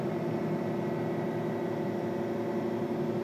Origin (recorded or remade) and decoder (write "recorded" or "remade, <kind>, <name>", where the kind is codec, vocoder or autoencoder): recorded